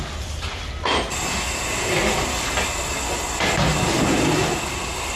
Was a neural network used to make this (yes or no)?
no